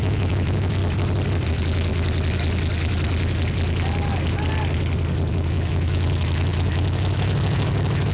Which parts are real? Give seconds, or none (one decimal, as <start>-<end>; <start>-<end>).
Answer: 0.8-1.5; 1.9-5.3